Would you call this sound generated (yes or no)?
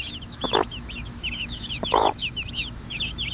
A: yes